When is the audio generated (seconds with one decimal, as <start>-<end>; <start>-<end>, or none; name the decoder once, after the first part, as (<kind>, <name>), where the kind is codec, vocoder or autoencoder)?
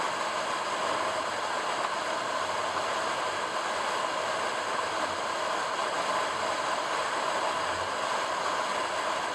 none